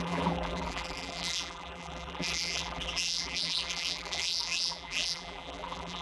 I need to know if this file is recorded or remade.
remade